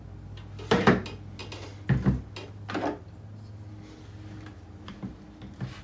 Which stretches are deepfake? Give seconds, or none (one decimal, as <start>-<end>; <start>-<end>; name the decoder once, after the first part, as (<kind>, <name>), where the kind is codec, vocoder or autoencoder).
none